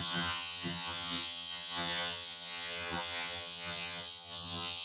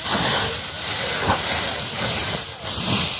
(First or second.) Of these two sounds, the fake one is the first